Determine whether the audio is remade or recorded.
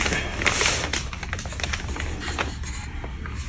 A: recorded